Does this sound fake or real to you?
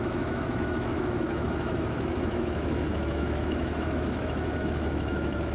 fake